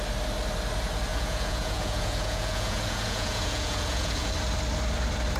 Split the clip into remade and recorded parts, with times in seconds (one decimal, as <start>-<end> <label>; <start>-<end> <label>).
0.0-1.1 recorded; 1.1-4.3 remade; 4.3-5.4 recorded